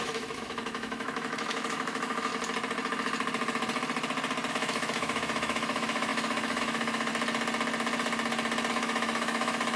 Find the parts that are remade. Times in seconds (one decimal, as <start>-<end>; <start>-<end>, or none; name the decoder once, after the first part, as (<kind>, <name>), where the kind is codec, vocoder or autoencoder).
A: 0.0-2.3 (autoencoder, DAC-VAE); 4.5-7.1; 8.7-9.8